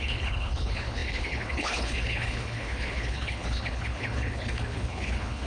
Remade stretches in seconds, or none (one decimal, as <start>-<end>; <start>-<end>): 0.0-5.5